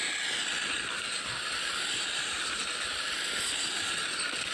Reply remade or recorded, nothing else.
recorded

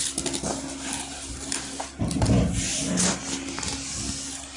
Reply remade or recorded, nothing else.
recorded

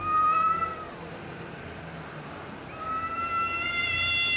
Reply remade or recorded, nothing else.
recorded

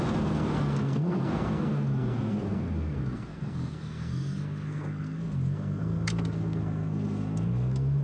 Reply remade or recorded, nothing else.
remade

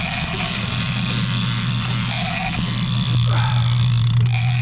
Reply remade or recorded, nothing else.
recorded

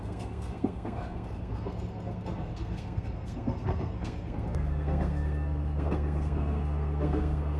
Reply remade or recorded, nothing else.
remade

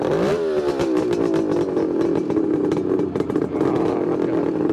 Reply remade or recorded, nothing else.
recorded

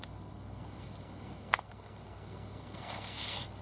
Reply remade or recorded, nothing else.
remade